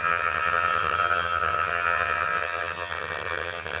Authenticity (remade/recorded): remade